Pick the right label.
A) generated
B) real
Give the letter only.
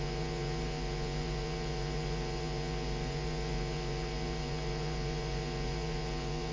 A